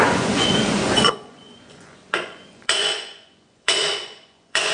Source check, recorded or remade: remade